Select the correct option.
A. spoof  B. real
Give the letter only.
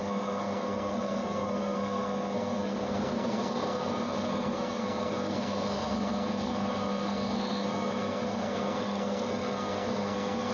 A